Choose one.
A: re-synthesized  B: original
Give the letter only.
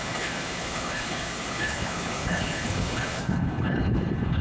A